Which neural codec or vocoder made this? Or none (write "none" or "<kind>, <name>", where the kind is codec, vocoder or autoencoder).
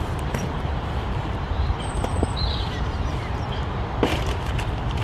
vocoder, BigVGAN v2